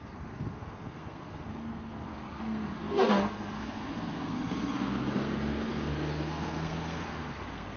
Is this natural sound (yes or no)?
no